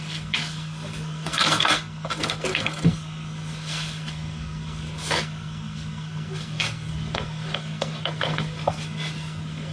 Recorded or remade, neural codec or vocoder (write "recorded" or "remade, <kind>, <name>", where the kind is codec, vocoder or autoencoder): remade, codec, SNAC